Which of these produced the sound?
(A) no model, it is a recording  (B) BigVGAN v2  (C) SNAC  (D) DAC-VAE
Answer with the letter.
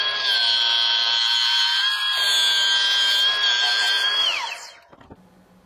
A